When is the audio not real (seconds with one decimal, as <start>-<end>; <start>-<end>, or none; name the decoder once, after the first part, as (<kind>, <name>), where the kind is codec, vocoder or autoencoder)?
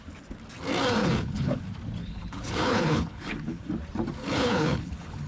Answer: 1.0-1.6 (codec, HILCodec); 2.0-3.7; 4.2-5.3